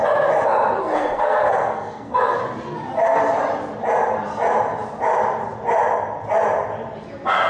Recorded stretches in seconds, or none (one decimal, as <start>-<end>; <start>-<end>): 0.0-0.8; 2.4-7.5